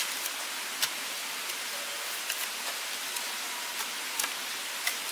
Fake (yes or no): no